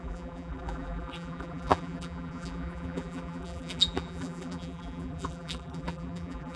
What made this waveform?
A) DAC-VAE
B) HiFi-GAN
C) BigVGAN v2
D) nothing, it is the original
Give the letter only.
C